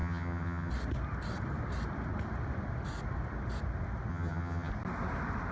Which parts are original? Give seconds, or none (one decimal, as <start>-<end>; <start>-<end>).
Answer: 0.7-4.1; 4.7-5.5